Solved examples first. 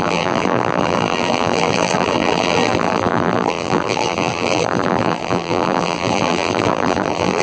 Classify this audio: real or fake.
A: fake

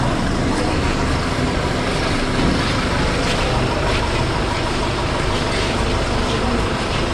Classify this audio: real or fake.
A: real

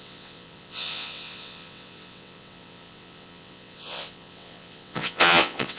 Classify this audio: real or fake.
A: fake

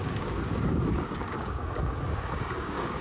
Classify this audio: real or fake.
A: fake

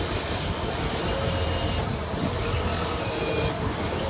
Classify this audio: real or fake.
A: real